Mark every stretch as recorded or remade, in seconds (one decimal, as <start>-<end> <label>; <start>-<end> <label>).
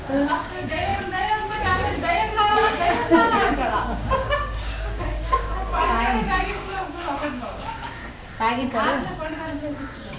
0.0-8.0 remade; 8.0-9.4 recorded; 9.4-10.2 remade